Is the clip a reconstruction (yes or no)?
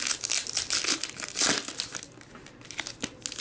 no